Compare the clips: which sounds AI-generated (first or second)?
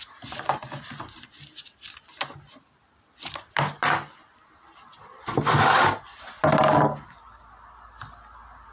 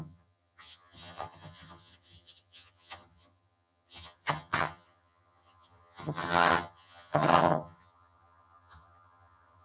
second